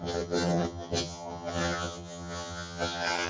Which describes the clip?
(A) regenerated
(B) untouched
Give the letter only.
A